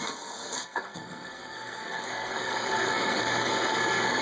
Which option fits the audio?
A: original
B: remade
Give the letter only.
B